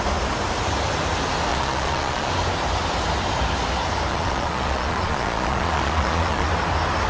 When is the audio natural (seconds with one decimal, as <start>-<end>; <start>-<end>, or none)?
0.0-1.5; 2.3-4.1; 6.5-7.1